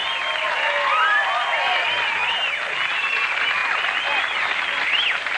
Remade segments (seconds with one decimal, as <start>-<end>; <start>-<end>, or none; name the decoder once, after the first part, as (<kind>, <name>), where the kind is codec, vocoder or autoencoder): none